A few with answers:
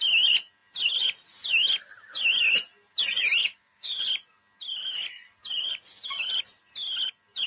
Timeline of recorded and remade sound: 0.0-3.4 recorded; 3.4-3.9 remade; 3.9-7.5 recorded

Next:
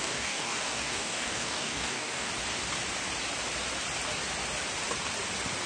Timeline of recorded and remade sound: 0.0-2.3 remade; 2.3-5.7 recorded

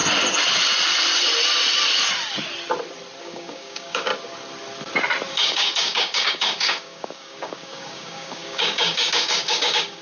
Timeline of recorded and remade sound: 0.0-3.2 recorded; 3.2-4.1 remade; 4.1-5.3 recorded; 5.3-10.0 remade

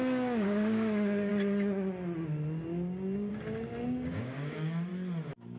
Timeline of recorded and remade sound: 0.0-1.3 remade; 1.3-3.3 recorded; 3.3-4.9 remade; 4.9-5.6 recorded